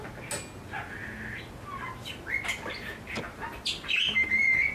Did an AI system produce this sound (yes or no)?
no